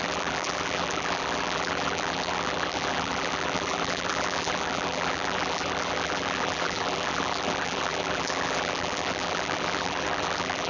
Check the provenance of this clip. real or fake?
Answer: fake